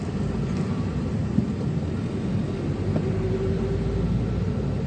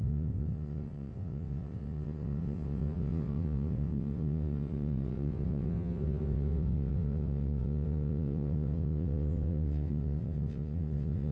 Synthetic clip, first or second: second